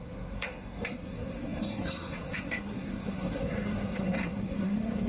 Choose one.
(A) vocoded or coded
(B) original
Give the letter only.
A